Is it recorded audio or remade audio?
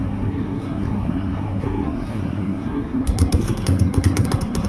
remade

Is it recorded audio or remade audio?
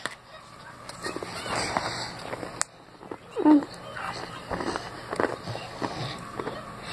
recorded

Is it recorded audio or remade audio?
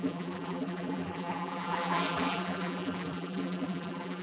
remade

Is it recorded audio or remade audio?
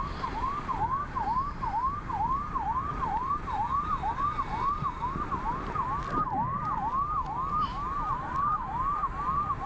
recorded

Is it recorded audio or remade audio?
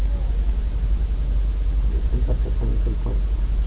remade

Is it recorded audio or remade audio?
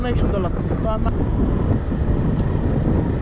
recorded